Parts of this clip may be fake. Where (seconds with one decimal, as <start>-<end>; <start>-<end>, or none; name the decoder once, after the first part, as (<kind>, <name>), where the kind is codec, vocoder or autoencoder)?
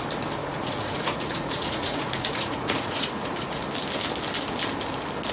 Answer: 0.4-3.6 (vocoder, Vocos)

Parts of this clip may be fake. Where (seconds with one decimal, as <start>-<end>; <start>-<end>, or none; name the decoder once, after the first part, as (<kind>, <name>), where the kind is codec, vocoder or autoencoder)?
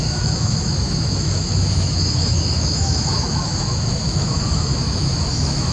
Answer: 0.0-5.7 (autoencoder, DAC-VAE)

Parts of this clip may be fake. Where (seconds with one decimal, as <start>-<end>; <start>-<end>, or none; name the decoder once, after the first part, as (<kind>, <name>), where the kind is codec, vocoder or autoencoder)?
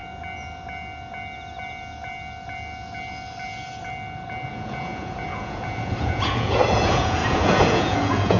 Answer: 4.5-8.4 (vocoder, Vocos)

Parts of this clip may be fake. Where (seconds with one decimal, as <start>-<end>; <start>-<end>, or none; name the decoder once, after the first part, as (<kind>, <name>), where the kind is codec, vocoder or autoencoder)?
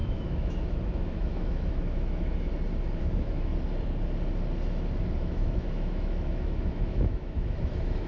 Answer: 0.0-2.5 (autoencoder, DAC-VAE); 3.0-3.5; 5.2-8.1